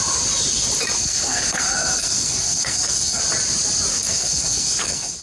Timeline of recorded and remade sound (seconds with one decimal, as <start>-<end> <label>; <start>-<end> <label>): 0.0-1.0 recorded; 1.0-3.2 remade; 3.2-3.9 recorded; 3.9-5.2 remade